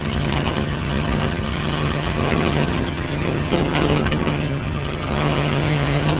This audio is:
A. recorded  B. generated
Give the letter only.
B